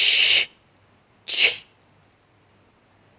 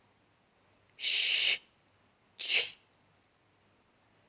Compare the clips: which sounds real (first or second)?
first